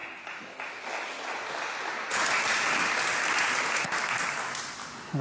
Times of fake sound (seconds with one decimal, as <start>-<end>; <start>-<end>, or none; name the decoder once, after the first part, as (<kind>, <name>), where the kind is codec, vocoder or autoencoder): none